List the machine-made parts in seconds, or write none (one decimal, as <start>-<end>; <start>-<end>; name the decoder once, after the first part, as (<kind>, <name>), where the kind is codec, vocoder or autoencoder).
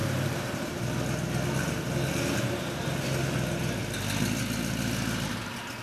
0.0-0.8 (vocoder, BigVGAN v2)